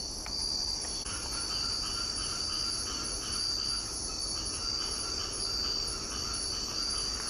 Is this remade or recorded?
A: recorded